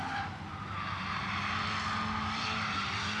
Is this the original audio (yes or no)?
yes